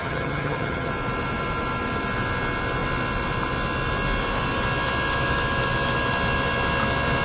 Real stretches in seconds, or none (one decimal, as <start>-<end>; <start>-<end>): 0.9-7.2